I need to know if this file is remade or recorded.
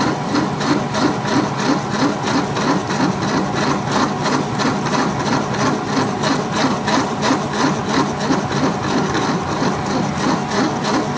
recorded